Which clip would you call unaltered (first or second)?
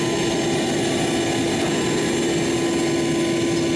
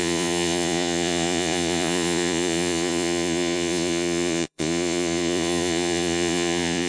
first